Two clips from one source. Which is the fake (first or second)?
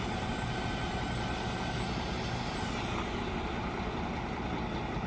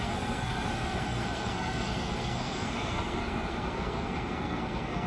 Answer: second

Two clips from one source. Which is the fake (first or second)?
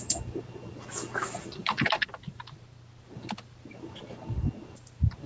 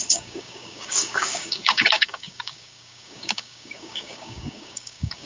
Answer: second